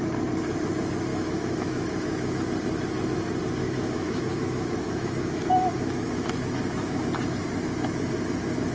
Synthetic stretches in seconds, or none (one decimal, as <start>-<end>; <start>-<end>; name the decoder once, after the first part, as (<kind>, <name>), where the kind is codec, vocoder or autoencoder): 1.1-2.4 (autoencoder, DAC-VAE); 3.6-7.0